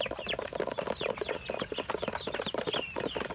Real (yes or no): yes